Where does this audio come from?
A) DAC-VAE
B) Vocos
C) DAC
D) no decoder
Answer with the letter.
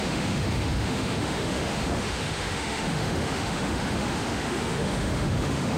A